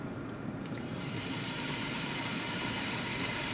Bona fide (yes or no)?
no